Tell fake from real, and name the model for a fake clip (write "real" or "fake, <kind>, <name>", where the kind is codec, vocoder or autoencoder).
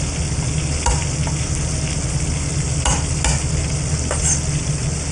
real